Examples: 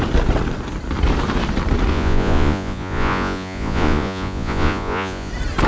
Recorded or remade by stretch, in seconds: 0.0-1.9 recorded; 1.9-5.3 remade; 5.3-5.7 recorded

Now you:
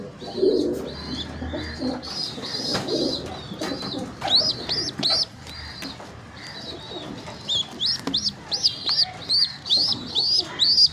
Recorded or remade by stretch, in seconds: 0.0-10.9 recorded

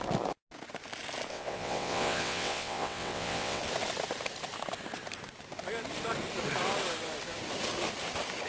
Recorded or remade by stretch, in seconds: 0.0-1.3 recorded; 1.3-3.6 remade; 3.6-8.5 recorded

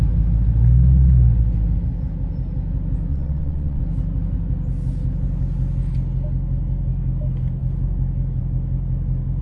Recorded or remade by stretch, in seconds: 0.0-3.1 recorded; 3.1-3.8 remade; 3.8-9.4 recorded

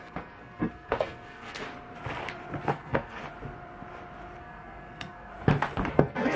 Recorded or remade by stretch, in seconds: 0.0-1.6 remade; 1.6-2.7 recorded; 2.7-3.2 remade; 3.2-4.4 recorded; 4.4-5.3 remade; 5.3-5.9 recorded; 5.9-6.4 remade

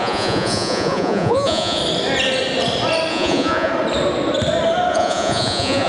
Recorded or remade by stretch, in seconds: 0.0-1.8 remade; 1.8-3.1 recorded; 3.1-3.7 remade; 3.7-4.9 recorded; 4.9-5.9 remade

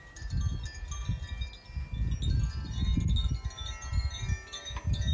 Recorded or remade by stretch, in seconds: 0.0-5.1 recorded

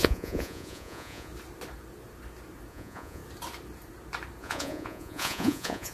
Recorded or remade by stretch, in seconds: 0.0-1.3 remade; 1.3-2.7 recorded; 2.7-3.2 remade; 3.2-4.4 recorded; 4.4-5.9 remade